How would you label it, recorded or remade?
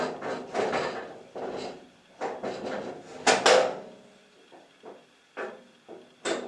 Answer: recorded